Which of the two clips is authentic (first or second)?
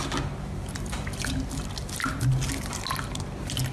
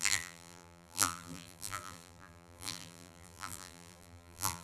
first